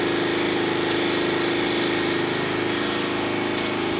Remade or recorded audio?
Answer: recorded